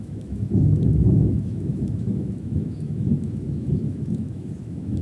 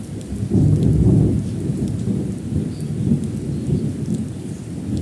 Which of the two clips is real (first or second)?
second